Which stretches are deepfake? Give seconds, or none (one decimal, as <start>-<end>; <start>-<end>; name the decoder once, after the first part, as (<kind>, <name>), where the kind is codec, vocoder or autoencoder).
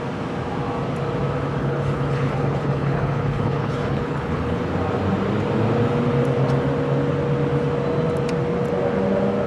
1.6-4.6 (codec, HILCodec)